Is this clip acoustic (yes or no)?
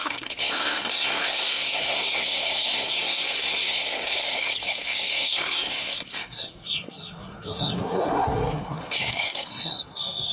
no